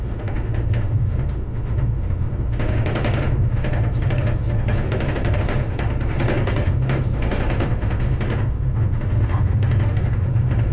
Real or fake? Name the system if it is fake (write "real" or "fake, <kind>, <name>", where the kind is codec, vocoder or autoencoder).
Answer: fake, autoencoder, DAC-VAE